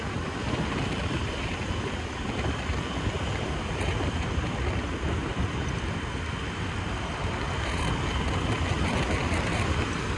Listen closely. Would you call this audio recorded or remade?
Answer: recorded